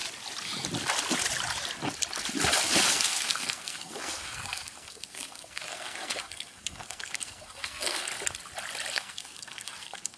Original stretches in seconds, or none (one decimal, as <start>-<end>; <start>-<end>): 0.0-2.9; 8.1-8.9

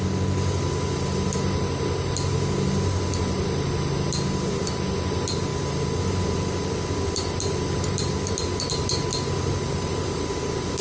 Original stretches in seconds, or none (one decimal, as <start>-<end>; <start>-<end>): 0.0-10.8

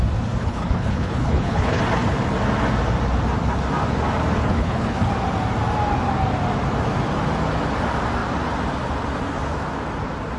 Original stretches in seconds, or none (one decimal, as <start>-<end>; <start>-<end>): 0.0-0.4; 1.8-4.4; 5.1-10.4

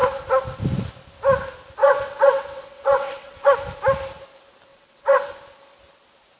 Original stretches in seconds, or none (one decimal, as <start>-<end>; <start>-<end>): 0.0-1.8; 3.5-4.7; 5.2-6.4

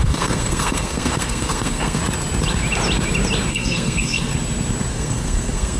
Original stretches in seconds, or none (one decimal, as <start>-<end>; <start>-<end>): 2.0-3.5; 4.3-4.9

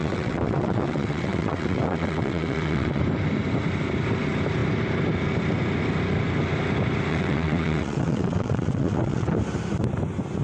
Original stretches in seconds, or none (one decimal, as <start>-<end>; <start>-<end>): 3.0-7.1; 9.3-10.4